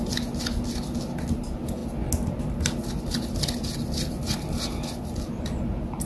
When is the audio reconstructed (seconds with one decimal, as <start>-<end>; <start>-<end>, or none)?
none